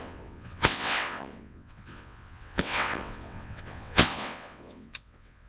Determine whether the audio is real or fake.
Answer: fake